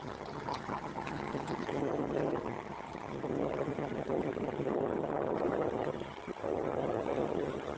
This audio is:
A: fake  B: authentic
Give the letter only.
A